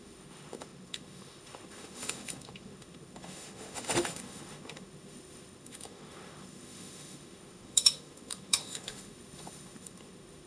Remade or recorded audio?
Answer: remade